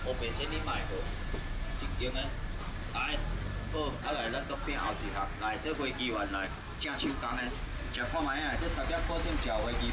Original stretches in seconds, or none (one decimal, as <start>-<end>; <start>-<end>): 0.0-0.6; 2.3-9.9